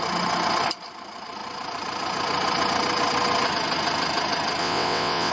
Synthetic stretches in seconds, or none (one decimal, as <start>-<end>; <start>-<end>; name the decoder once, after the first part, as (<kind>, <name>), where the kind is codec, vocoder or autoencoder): 4.6-5.3 (vocoder, WaveNeXt)